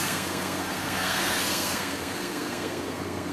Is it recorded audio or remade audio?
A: remade